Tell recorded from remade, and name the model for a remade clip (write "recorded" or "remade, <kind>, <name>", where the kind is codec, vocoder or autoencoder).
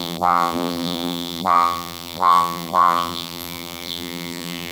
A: remade, vocoder, BigVGAN v2